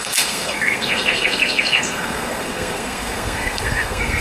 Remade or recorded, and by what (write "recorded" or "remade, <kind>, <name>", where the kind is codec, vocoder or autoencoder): remade, codec, SNAC